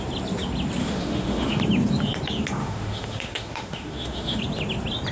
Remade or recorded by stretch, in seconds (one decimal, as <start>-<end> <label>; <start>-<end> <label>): 0.0-0.8 recorded; 0.8-1.6 remade; 1.6-2.6 recorded; 2.6-4.4 remade; 4.4-5.1 recorded